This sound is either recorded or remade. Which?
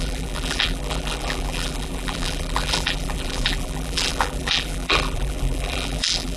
remade